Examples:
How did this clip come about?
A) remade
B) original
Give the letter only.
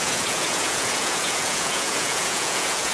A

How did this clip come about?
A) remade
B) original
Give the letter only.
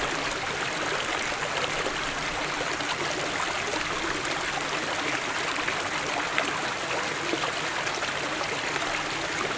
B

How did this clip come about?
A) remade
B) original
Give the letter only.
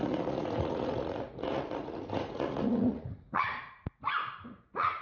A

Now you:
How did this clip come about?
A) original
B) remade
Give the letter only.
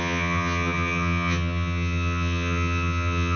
B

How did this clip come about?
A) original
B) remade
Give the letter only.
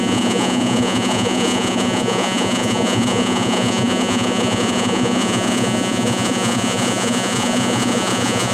B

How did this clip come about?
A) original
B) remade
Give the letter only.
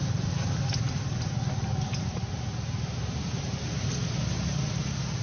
A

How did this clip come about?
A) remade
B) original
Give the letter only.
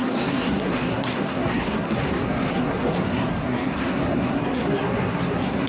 A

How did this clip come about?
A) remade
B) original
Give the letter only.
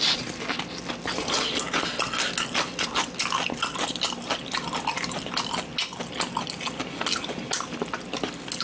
B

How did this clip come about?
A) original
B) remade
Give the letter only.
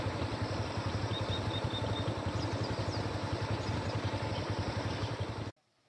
A